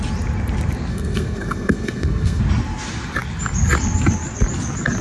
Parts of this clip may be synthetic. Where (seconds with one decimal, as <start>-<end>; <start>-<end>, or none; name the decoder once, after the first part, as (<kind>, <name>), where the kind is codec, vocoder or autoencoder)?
0.9-2.4 (codec, SNAC)